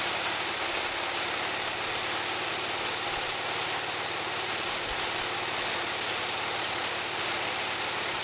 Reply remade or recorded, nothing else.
recorded